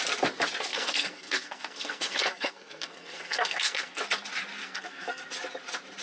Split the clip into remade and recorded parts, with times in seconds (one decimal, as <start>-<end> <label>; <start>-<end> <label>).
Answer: 0.0-0.7 recorded; 0.7-4.0 remade; 4.0-4.6 recorded; 4.6-5.3 remade; 5.3-6.0 recorded